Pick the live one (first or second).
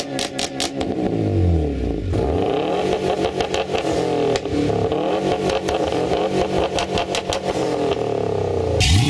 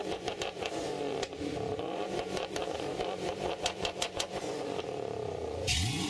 first